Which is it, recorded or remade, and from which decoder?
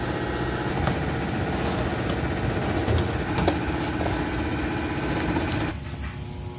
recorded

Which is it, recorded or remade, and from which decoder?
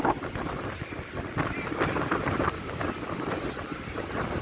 recorded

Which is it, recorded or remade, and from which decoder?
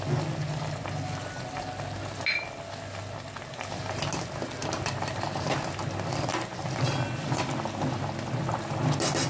recorded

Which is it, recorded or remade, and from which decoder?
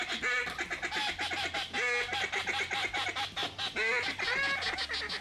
recorded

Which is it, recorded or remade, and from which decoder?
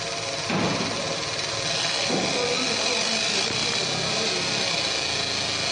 recorded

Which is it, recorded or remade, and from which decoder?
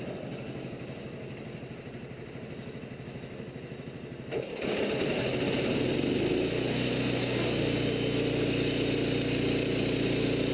recorded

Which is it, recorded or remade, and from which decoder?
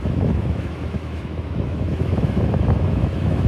remade, autoencoder, DAC-VAE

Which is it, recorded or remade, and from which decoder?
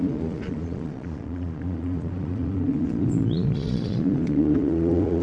remade, vocoder, Vocos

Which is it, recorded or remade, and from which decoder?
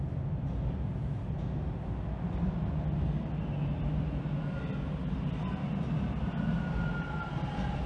recorded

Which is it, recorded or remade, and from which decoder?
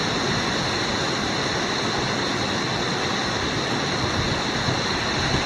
recorded